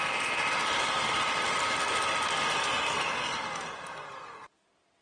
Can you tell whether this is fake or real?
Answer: real